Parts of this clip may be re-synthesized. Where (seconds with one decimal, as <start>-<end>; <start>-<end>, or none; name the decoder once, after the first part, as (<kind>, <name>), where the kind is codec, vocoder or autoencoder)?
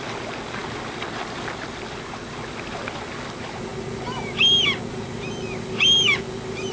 none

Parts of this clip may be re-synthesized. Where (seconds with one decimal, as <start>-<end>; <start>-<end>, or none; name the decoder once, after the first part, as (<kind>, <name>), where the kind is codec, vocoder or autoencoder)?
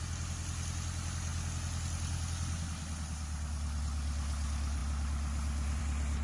none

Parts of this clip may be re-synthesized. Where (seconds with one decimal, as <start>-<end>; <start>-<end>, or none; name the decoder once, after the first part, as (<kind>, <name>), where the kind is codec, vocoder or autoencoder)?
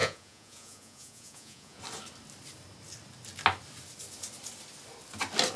0.0-1.8 (vocoder, Vocos)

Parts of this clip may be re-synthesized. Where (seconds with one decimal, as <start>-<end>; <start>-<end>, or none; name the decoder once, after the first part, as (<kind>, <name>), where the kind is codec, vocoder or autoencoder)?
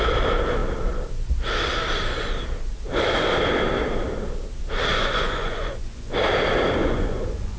4.9-6.2 (vocoder, Vocos); 6.8-7.6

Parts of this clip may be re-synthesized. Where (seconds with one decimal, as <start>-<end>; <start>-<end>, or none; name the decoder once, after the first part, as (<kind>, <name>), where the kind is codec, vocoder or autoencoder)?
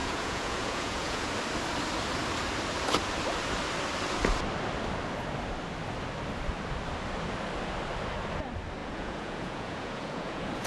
0.0-1.3 (vocoder, Vocos); 8.8-10.7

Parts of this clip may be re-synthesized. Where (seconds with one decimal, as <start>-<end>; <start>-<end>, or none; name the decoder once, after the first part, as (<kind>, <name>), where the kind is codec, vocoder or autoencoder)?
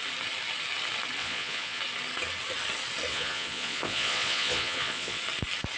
1.2-1.8 (vocoder, Vocos); 3.1-5.2